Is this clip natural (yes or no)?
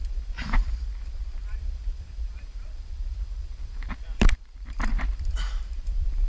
no